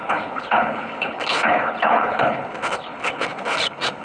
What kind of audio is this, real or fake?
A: fake